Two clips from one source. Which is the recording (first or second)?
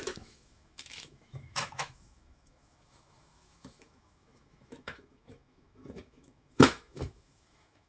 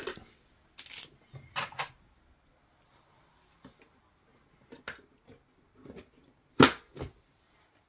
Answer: second